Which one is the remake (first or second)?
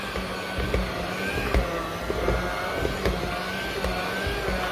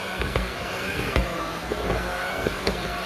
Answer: second